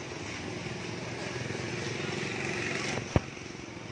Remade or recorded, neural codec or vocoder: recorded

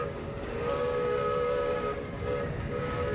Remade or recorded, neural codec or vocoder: remade, codec, DAC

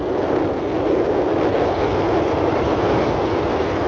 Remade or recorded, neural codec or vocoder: recorded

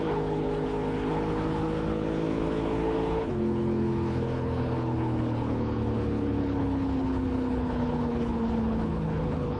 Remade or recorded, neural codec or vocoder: remade, codec, HILCodec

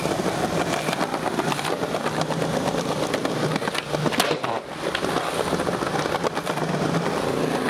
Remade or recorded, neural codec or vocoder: recorded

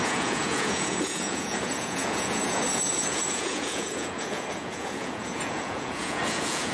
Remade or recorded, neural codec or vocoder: remade, vocoder, Vocos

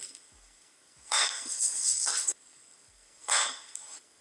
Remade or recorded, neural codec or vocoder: remade, codec, SNAC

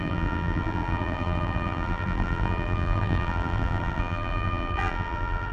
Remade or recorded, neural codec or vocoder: remade, vocoder, BigVGAN v2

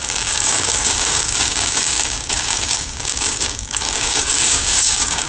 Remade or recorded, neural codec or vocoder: remade, codec, DAC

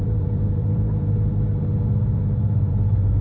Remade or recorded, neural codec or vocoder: remade, vocoder, BigVGAN v2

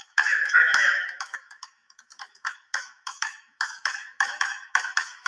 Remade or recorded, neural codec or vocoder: remade, autoencoder, DAC-VAE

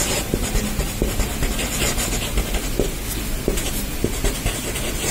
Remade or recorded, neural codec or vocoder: recorded